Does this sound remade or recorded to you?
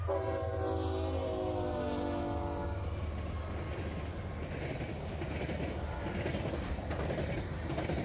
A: recorded